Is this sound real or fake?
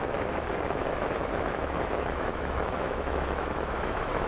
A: fake